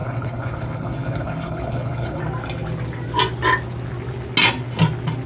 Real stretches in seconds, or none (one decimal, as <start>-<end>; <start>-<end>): 2.2-5.3